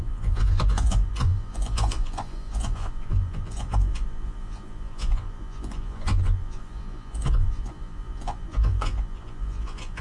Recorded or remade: remade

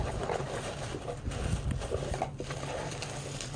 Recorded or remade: recorded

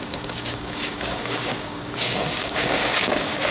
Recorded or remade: remade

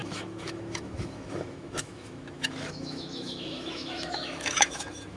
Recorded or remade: remade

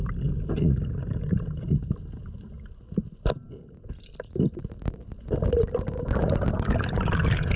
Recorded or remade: recorded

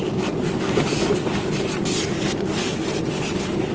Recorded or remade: recorded